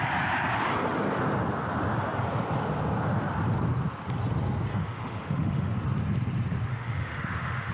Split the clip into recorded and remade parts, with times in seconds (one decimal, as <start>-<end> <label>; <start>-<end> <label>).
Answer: 0.0-4.7 recorded; 4.7-5.7 remade; 5.7-6.7 recorded; 6.7-7.7 remade